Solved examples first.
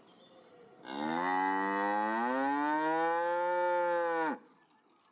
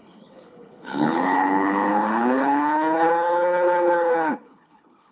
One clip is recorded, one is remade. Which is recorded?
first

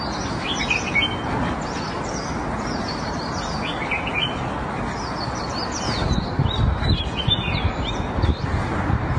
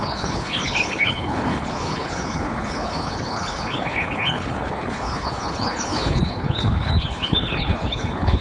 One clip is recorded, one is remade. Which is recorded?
first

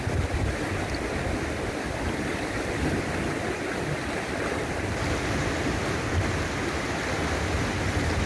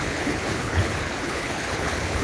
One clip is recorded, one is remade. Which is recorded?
first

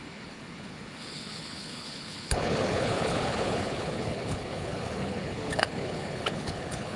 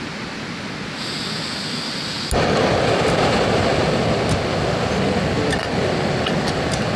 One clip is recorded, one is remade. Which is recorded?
second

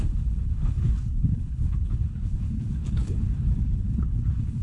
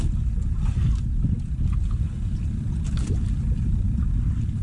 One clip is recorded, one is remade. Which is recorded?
second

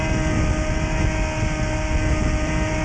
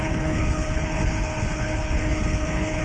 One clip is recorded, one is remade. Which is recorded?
first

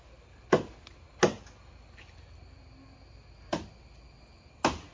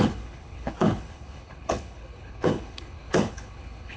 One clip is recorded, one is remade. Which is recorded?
first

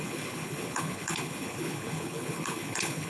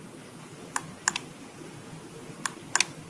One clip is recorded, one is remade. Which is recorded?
second